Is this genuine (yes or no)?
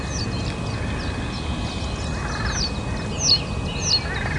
yes